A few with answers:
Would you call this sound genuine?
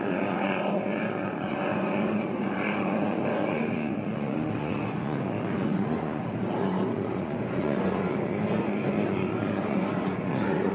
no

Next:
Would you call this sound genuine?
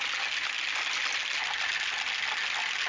yes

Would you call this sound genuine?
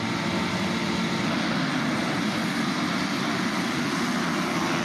yes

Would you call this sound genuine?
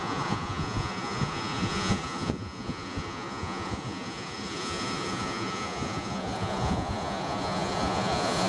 no